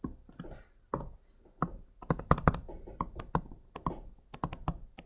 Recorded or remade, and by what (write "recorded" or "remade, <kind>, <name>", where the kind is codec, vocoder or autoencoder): recorded